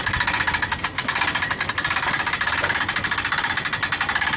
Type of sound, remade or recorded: recorded